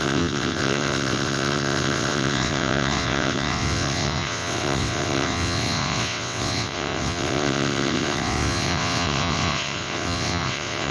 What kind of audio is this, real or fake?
fake